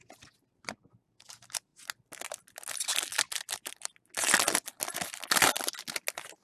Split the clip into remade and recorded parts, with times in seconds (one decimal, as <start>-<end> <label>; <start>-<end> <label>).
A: 0.0-6.4 recorded